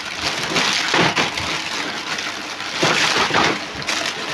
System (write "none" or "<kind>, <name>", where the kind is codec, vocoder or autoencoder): none